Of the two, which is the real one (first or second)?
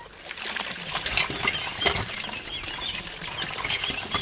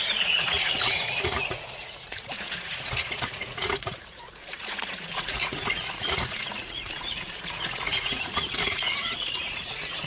first